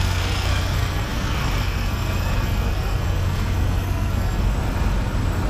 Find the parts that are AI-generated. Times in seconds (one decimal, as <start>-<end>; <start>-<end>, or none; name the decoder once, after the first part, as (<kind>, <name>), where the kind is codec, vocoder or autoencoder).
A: 0.0-4.5 (codec, SNAC)